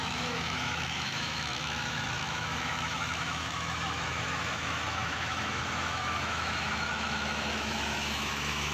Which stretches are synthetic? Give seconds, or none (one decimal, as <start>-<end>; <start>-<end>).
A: 0.0-8.7